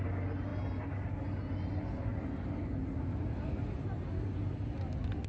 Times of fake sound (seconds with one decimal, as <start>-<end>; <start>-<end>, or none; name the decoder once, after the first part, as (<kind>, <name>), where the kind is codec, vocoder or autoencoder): none